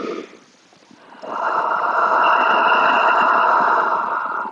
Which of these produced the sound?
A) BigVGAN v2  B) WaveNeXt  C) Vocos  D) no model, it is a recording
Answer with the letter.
D